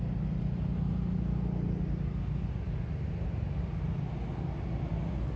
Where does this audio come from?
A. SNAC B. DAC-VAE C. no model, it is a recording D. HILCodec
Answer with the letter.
C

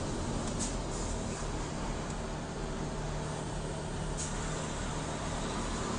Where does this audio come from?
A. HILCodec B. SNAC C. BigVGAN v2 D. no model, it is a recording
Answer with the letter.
D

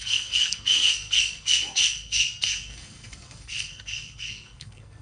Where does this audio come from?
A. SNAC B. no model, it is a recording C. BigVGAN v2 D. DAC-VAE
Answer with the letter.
A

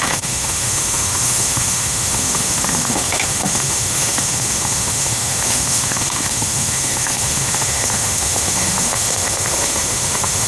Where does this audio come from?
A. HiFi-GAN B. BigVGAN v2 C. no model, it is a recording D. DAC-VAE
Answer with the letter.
D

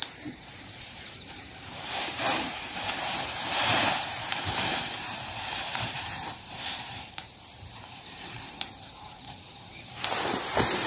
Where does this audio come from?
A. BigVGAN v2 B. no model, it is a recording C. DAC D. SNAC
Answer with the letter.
A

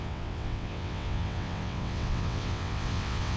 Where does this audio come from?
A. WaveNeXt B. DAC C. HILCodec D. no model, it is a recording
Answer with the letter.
A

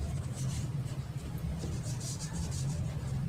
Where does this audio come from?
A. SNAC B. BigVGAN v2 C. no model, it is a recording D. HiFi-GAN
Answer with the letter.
B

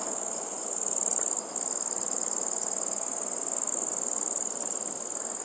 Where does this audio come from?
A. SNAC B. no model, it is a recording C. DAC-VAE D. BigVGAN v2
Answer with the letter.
B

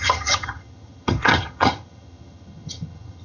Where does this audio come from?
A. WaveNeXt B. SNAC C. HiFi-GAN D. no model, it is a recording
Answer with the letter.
C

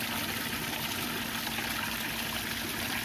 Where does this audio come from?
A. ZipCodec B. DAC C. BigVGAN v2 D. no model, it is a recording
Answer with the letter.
D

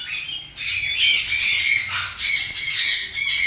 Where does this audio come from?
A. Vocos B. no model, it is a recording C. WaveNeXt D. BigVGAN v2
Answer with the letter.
B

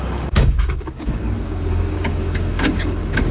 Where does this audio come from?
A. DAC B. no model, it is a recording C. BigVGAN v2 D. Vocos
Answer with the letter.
A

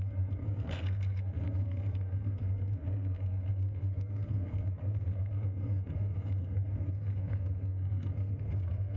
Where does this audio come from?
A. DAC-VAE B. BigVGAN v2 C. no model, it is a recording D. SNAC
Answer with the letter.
D